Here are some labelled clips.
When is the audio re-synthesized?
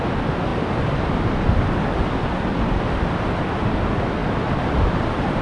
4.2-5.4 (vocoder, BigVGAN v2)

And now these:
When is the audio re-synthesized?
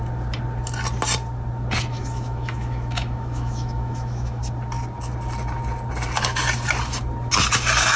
1.9-4.4 (autoencoder, DAC-VAE)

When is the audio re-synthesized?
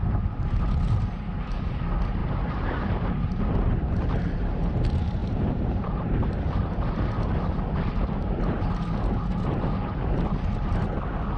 2.2-4.1 (vocoder, BigVGAN v2); 5.2-6.4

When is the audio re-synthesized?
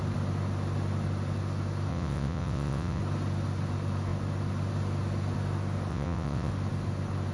1.9-3.0 (vocoder, WaveNeXt); 5.9-6.5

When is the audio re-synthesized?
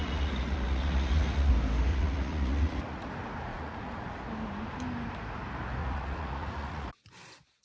0.0-1.5 (vocoder, Vocos); 1.9-3.1; 3.5-4.2; 5.8-6.9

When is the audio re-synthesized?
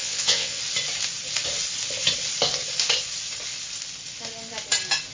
0.0-0.6 (vocoder, WaveNeXt)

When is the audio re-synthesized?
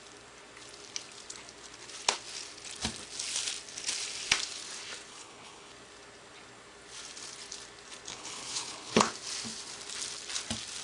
5.1-5.7 (codec, HILCodec); 8.1-9.0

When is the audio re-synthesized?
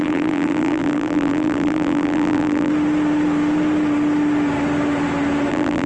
0.0-2.7 (vocoder, BigVGAN v2); 5.5-5.9